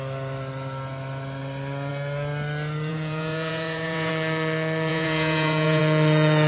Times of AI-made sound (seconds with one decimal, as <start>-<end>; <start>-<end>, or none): 2.9-4.1; 4.9-5.8